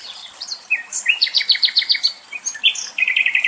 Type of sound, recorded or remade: remade